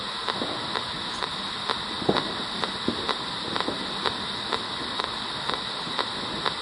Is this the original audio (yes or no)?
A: yes